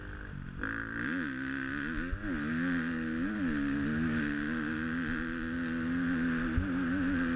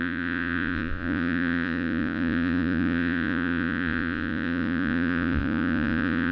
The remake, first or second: second